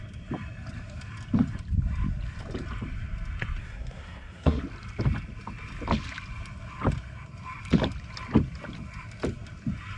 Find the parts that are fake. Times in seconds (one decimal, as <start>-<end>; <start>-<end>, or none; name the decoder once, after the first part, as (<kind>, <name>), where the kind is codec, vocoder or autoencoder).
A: 3.6-4.6 (codec, SNAC)